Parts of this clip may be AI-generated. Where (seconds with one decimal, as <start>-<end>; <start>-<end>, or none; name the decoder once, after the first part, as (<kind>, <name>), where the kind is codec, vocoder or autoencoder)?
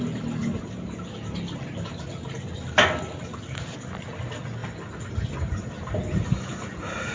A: none